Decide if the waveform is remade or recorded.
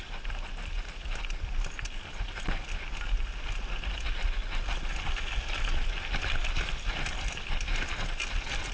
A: recorded